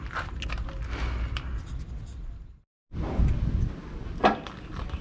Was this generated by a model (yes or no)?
no